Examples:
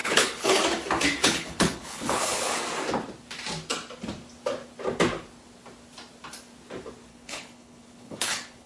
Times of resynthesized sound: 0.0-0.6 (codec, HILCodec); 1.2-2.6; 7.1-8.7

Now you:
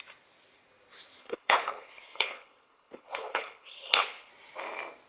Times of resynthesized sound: 1.2-4.3 (codec, HILCodec)

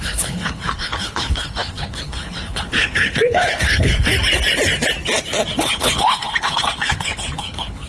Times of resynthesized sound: 0.0-4.1 (codec, HILCodec); 5.6-7.9

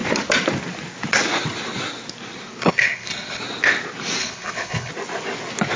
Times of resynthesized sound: 2.6-3.4 (codec, HILCodec); 4.2-4.9

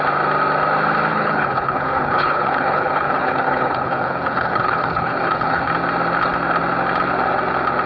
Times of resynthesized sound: 1.1-5.6 (codec, HILCodec)

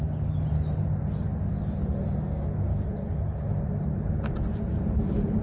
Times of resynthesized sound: 2.7-3.5 (codec, HILCodec)

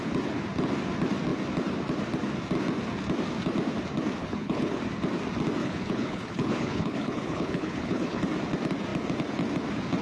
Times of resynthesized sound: 4.2-4.8 (codec, HILCodec); 5.6-8.2